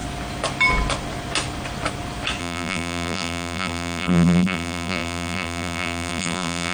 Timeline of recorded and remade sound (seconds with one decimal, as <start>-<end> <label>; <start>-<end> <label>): 0.0-2.4 recorded; 2.4-6.7 remade